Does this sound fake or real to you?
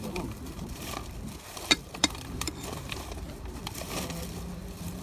fake